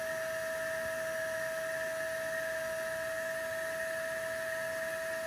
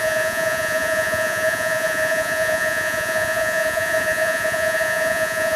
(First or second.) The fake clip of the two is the second